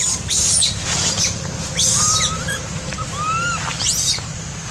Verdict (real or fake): real